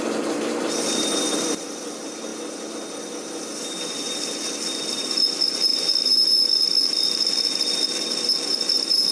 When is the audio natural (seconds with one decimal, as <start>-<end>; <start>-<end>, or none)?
2.3-3.9